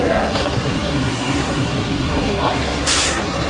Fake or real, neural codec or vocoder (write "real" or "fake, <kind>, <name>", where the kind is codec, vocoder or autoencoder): fake, codec, SNAC